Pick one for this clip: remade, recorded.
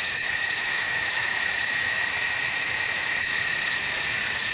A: remade